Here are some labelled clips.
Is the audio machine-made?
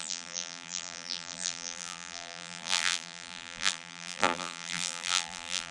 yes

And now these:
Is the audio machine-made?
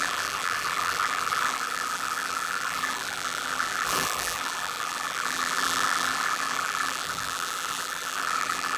yes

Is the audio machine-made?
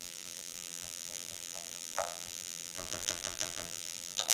yes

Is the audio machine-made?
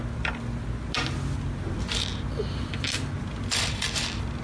no